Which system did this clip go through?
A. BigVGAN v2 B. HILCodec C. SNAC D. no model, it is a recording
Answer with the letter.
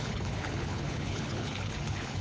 B